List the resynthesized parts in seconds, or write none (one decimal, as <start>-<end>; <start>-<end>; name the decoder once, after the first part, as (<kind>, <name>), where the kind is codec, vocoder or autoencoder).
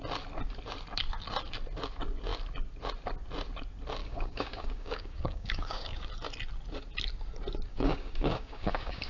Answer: 4.0-6.1 (codec, DAC); 7.7-9.1